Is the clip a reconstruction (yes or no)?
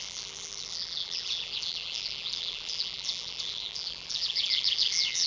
yes